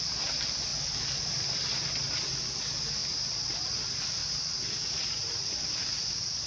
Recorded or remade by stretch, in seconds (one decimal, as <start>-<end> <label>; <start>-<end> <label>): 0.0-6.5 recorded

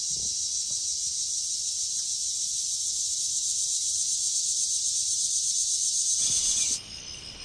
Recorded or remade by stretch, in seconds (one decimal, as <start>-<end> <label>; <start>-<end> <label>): 0.0-7.4 recorded

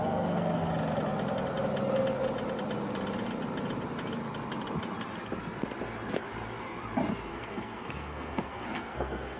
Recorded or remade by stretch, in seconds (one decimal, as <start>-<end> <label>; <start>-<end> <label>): 0.0-0.7 remade; 0.7-7.3 recorded; 7.3-9.4 remade